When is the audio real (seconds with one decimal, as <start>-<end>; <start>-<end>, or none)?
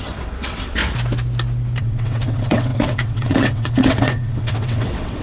0.8-1.8